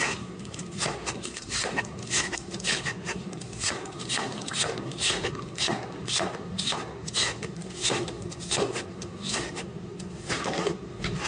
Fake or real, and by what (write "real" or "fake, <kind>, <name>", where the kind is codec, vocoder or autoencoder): fake, codec, SNAC